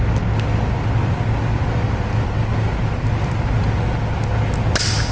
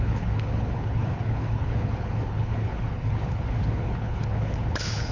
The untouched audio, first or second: first